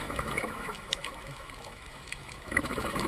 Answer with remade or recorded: remade